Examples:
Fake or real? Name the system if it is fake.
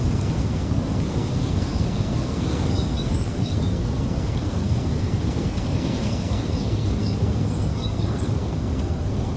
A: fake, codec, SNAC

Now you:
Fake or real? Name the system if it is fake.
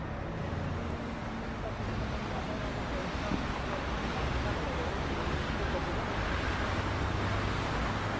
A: real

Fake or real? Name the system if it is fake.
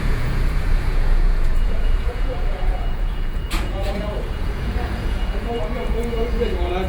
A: fake, vocoder, Vocos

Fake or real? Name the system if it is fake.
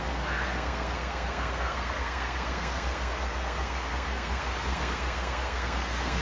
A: fake, codec, SNAC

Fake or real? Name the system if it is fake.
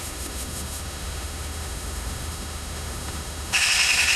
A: fake, autoencoder, DAC-VAE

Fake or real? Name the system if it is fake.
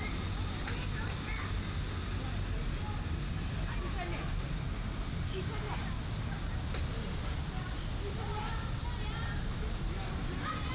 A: real